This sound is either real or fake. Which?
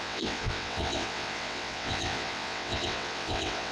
fake